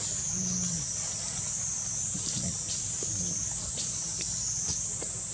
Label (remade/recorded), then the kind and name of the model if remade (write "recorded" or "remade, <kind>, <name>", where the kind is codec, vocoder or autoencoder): recorded